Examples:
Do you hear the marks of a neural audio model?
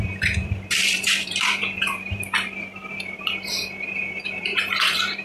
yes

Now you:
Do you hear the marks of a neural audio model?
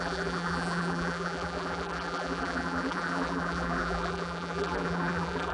yes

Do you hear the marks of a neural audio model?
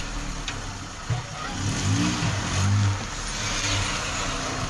no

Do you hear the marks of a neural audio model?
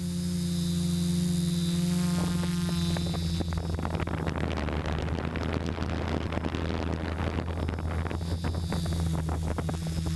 no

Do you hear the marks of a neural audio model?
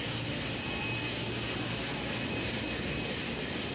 no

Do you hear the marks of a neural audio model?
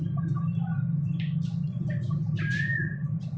no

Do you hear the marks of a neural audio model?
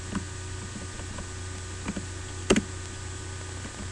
no